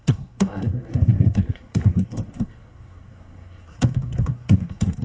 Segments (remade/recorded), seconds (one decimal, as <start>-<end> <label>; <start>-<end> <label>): 0.0-5.0 remade